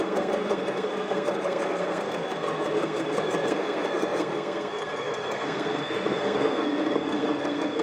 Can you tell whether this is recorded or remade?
remade